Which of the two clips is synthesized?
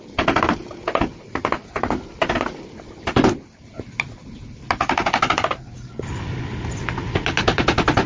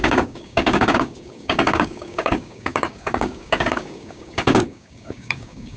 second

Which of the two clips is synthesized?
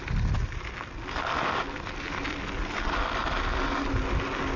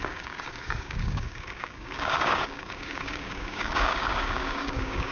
second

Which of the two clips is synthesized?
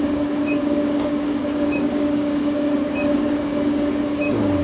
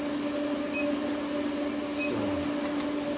first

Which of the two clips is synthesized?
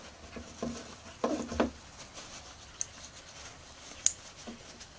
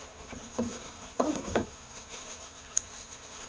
second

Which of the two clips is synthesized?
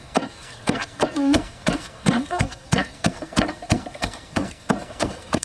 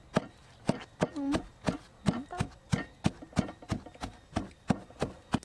first